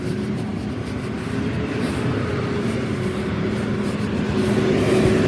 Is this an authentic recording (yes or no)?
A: yes